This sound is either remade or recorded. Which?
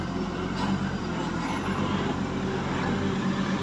recorded